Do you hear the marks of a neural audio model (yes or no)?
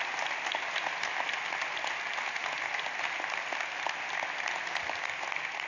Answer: no